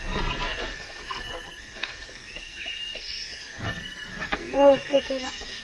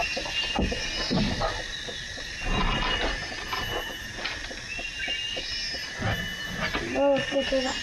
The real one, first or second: second